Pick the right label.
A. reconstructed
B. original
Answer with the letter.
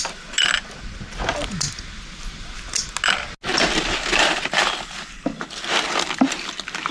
B